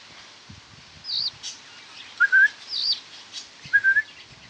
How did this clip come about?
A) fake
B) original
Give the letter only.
B